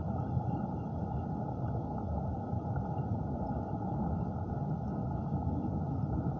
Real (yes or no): yes